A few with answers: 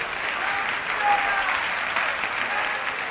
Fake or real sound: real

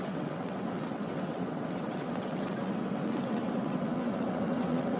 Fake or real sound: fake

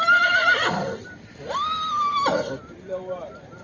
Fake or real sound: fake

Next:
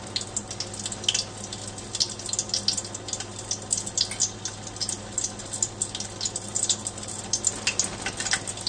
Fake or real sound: real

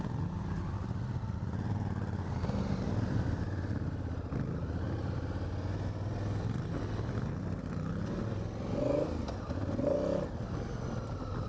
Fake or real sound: real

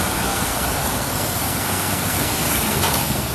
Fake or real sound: fake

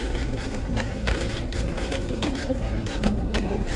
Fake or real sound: fake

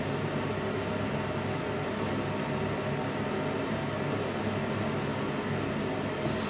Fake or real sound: real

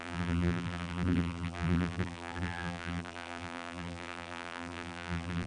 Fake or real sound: fake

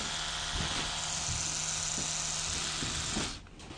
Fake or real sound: real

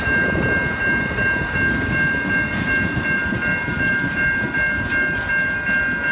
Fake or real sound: real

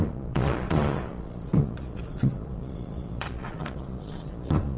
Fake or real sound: fake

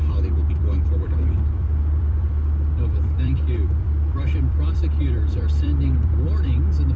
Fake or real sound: fake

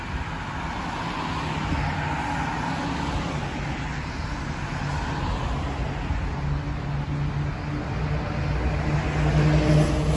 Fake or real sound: real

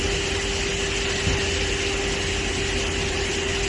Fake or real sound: real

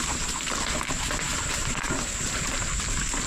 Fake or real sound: real